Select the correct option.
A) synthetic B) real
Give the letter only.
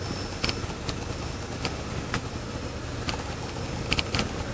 B